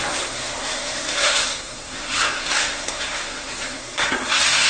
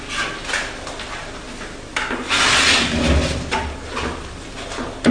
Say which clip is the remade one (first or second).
first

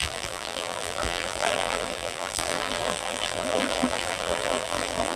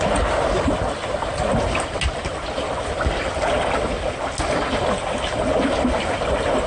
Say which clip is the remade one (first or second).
first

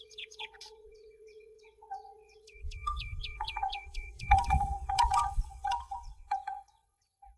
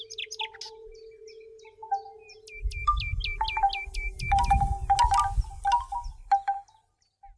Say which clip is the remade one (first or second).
first